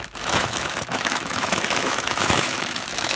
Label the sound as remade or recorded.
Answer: remade